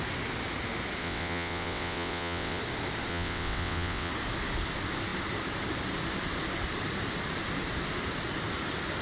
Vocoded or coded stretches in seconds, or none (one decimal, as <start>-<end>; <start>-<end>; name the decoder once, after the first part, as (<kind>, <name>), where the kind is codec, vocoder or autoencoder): 1.0-2.6 (vocoder, WaveNeXt); 3.1-4.1